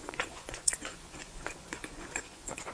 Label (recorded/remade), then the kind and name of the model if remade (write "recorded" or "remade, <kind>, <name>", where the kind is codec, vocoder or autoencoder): remade, vocoder, Vocos